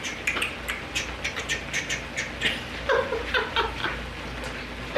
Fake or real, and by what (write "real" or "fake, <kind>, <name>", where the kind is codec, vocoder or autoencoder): real